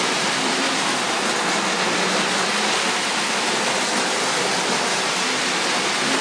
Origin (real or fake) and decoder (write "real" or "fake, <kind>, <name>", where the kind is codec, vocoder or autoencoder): real